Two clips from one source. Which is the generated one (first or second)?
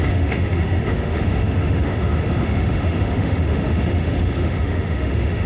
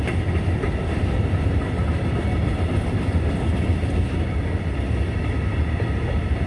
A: first